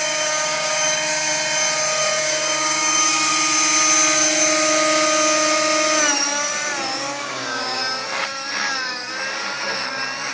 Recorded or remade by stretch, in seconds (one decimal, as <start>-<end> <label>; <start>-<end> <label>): 0.0-1.3 remade; 1.3-2.2 recorded; 2.2-3.3 remade; 3.3-6.9 recorded; 6.9-7.8 remade; 7.8-10.3 recorded